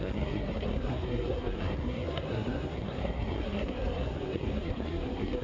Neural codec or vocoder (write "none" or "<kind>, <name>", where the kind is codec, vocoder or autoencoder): codec, SNAC